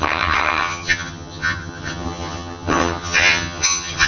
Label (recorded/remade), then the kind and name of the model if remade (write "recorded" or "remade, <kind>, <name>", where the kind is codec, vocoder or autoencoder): remade, vocoder, HiFi-GAN